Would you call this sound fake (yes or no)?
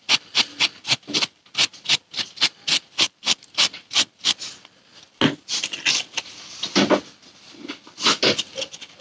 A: no